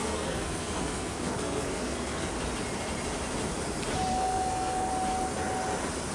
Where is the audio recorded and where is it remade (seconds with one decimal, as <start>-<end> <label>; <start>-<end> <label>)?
0.0-2.3 remade; 2.3-4.1 recorded; 4.1-4.9 remade; 4.9-6.1 recorded